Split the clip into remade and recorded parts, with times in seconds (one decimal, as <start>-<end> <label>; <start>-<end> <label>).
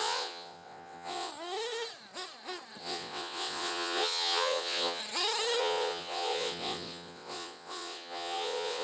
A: 0.0-1.3 remade; 1.3-2.8 recorded; 2.8-5.0 remade; 5.0-5.6 recorded; 5.6-8.8 remade